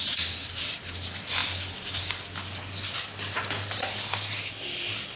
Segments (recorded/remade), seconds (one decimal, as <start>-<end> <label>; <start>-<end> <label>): 0.0-5.2 recorded